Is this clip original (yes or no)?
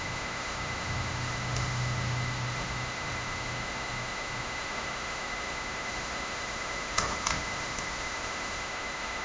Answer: no